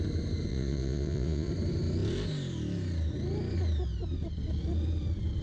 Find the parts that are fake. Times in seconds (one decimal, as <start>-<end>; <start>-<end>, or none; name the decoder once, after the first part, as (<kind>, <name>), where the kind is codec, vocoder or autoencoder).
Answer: 0.5-1.5 (vocoder, Vocos)